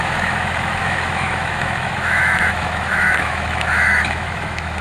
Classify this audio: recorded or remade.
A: remade